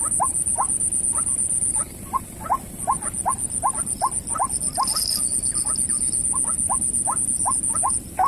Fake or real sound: real